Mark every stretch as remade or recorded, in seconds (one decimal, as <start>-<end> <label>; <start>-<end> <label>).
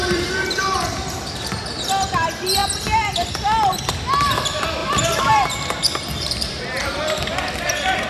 0.0-1.6 remade; 1.6-4.8 recorded; 4.8-6.6 remade; 6.6-8.1 recorded